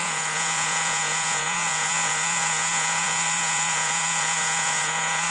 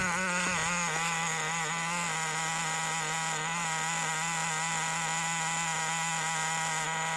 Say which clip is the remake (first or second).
first